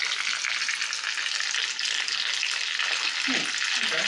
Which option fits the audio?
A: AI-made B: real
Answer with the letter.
B